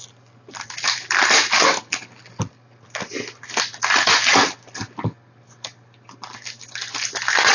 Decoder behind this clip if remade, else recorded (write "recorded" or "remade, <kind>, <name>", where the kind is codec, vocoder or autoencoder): recorded